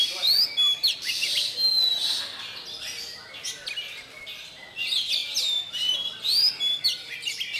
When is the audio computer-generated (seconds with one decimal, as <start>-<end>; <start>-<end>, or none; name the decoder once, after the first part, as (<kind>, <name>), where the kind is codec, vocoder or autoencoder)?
none